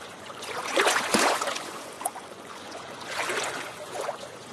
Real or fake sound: fake